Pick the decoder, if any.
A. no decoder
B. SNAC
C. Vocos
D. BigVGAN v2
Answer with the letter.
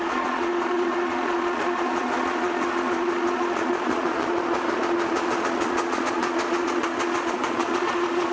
C